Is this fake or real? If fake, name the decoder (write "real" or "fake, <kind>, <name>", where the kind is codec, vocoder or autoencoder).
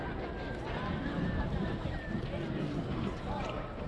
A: real